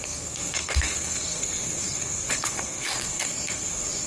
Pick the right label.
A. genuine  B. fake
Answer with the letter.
B